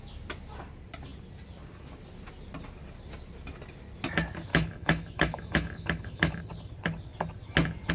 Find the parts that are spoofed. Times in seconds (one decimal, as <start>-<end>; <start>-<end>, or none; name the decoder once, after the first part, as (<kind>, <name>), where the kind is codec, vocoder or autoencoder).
4.5-6.4 (autoencoder, DAC-VAE)